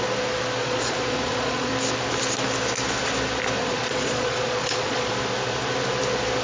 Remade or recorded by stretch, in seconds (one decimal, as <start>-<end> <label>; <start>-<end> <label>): 0.0-0.6 recorded; 0.6-1.7 remade; 1.7-3.6 recorded; 3.6-5.1 remade; 5.1-6.4 recorded